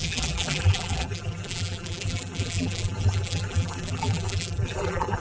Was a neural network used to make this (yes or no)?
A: yes